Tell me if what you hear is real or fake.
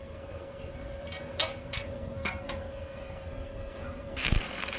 fake